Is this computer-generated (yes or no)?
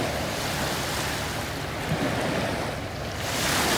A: no